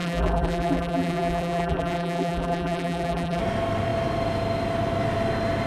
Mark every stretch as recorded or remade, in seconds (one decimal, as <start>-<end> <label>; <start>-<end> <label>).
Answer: 0.0-3.4 remade; 3.4-5.7 recorded